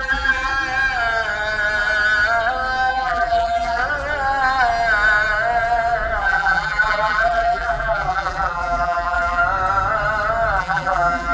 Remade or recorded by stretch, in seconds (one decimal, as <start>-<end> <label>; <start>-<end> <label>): 0.0-0.5 remade; 0.5-2.9 recorded; 2.9-3.8 remade; 3.8-6.2 recorded; 6.2-9.4 remade; 9.4-10.6 recorded; 10.6-11.3 remade